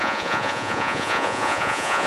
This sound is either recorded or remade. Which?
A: remade